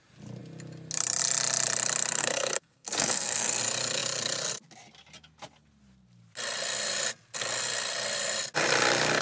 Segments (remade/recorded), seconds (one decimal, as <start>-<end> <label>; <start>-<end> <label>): 0.0-2.2 recorded; 2.2-3.6 remade; 3.6-9.2 recorded